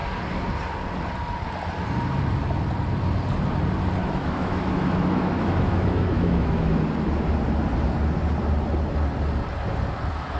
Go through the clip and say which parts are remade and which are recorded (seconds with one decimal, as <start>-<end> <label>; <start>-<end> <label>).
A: 0.0-4.0 recorded; 4.0-6.8 remade; 6.8-10.4 recorded